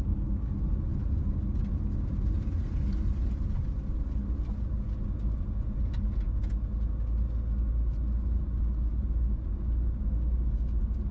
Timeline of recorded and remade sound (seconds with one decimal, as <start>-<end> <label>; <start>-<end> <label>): 0.0-11.1 recorded